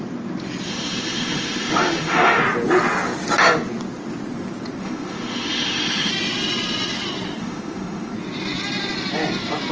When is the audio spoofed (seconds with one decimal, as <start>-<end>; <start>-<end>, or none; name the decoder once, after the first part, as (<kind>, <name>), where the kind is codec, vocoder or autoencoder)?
0.7-2.4 (autoencoder, DAC-VAE); 4.8-6.1; 7.4-8.1